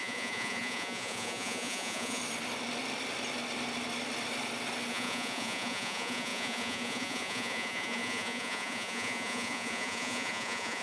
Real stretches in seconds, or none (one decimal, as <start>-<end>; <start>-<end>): 2.2-4.9